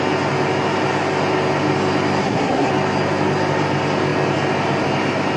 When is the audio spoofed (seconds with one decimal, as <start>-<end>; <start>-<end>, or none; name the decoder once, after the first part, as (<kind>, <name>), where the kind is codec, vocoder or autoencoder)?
2.2-2.7 (codec, SNAC)